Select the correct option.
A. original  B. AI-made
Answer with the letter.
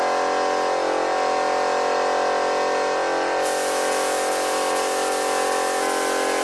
A